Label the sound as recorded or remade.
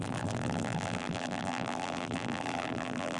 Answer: remade